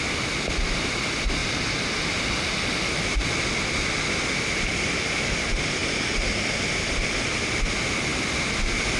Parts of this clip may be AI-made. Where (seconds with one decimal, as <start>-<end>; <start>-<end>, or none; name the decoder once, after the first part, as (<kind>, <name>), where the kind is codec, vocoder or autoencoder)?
none